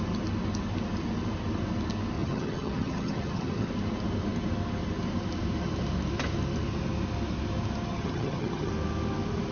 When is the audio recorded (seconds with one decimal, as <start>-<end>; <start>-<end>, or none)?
0.0-2.2; 3.7-7.9; 8.7-9.5